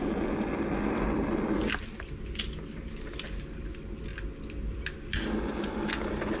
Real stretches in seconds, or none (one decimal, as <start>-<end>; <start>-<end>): 0.0-6.4

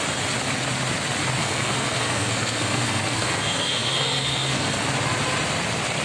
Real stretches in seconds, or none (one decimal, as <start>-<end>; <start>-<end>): 0.0-1.4; 4.8-6.0

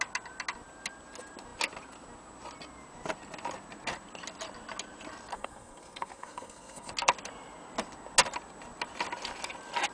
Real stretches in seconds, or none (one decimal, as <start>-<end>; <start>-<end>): 0.0-5.3; 6.9-9.9

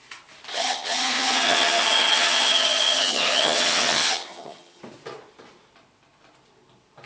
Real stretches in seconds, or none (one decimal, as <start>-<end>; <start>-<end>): 0.0-0.5; 4.8-7.1

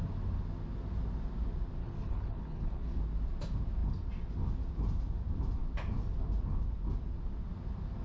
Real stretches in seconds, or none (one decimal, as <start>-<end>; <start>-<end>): 0.0-1.8; 3.0-8.0